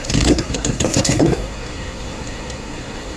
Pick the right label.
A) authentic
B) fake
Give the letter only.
B